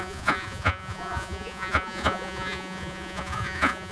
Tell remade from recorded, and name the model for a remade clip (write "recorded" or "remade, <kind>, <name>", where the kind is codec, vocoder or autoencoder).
remade, vocoder, Vocos